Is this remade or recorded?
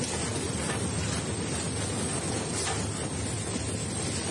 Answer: recorded